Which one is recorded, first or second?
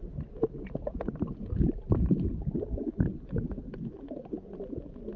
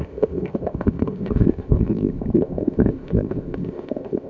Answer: first